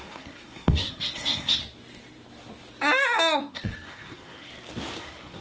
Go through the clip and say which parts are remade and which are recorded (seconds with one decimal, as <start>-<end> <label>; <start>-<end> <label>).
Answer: 0.0-1.6 remade; 1.6-3.5 recorded; 3.5-4.5 remade; 4.5-5.0 recorded; 5.0-5.4 remade